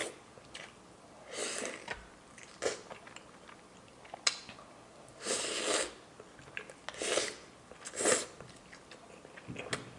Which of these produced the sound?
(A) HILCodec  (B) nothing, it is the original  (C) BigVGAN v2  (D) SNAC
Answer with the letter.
B